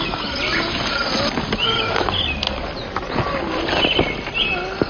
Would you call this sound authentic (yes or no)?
yes